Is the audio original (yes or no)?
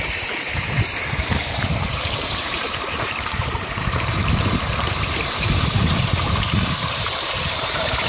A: no